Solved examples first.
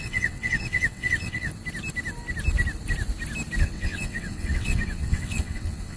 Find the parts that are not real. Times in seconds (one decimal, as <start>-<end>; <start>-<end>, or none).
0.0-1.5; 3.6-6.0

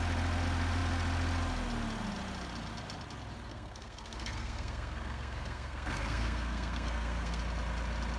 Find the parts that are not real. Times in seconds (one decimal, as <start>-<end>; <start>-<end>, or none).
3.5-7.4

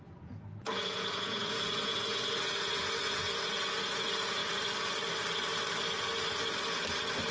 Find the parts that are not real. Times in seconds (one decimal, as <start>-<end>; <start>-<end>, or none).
0.0-4.4

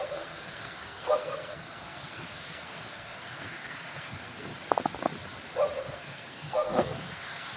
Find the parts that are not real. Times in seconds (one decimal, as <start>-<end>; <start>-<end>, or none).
0.0-4.5; 5.8-7.6

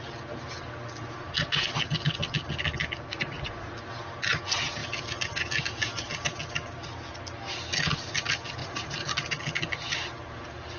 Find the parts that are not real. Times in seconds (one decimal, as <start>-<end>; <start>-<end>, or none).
3.1-3.7; 8.6-9.1

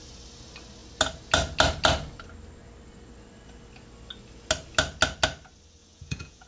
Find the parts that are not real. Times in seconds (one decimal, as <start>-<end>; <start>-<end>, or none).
5.8-6.5

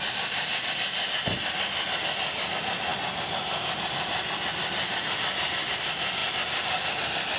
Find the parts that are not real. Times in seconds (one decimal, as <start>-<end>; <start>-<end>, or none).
none

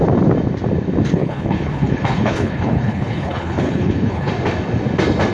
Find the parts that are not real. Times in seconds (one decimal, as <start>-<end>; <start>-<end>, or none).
1.1-4.3